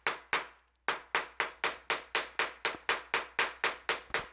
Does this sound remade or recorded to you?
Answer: recorded